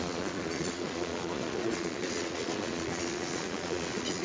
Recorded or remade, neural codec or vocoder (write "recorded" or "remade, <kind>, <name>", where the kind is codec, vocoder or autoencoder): remade, vocoder, Vocos